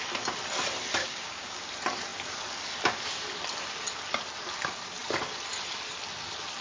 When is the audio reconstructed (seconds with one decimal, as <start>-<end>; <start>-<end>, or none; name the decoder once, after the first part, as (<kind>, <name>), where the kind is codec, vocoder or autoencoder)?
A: 1.0-1.7 (codec, DAC)